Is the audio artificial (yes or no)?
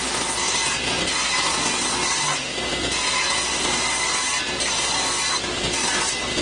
no